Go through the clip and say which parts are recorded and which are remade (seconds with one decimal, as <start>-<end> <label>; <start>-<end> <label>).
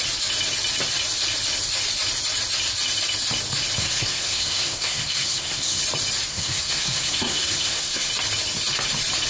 0.0-3.8 recorded; 3.8-5.8 remade; 5.8-6.3 recorded; 6.3-8.1 remade; 8.1-9.3 recorded